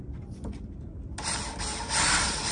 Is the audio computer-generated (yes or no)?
no